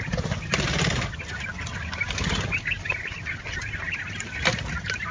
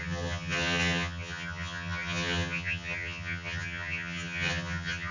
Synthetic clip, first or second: second